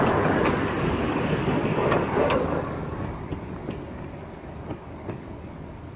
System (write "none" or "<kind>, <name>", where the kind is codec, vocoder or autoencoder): codec, DAC